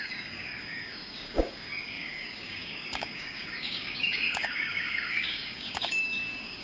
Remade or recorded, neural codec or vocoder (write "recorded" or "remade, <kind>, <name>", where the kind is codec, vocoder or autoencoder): remade, codec, DAC